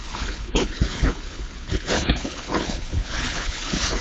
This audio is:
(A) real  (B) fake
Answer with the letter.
B